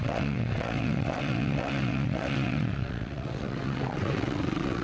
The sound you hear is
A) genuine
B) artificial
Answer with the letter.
B